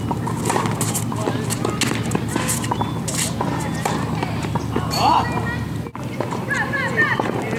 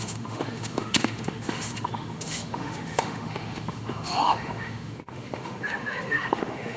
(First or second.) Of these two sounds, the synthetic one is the second